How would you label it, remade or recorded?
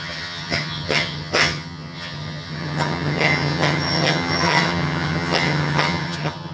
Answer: remade